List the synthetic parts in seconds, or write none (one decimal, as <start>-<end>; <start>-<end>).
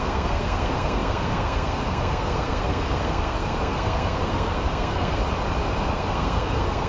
0.0-5.2; 5.8-6.9